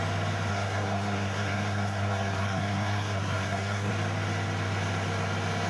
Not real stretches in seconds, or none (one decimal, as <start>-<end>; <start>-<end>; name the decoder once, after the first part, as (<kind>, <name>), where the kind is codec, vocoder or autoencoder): 0.5-3.9 (codec, SNAC)